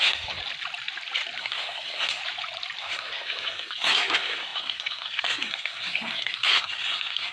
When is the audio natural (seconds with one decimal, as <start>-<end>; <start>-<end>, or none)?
0.4-1.4; 2.2-2.8